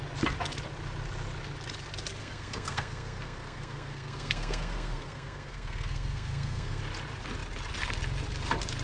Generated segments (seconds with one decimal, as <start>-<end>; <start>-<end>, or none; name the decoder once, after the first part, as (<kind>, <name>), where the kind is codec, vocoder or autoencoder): 2.2-6.8 (codec, SNAC)